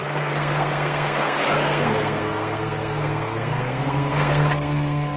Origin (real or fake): fake